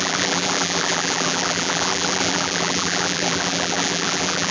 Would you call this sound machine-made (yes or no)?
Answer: yes